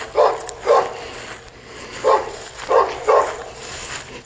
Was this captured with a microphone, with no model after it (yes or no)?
yes